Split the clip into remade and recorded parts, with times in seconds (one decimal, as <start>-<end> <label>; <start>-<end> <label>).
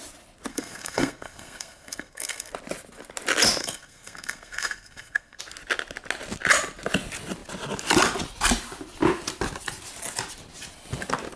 0.0-0.5 recorded; 0.5-2.5 remade; 2.5-3.6 recorded; 3.6-5.4 remade; 5.4-11.4 recorded